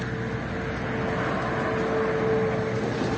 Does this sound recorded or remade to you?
recorded